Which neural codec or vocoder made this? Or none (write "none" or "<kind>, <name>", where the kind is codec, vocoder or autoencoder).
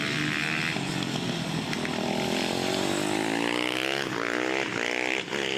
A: none